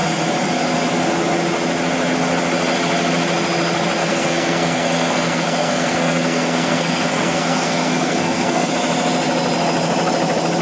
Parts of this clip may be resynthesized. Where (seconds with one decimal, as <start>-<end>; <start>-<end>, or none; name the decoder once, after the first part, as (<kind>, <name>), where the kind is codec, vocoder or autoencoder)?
4.0-8.7 (codec, SNAC)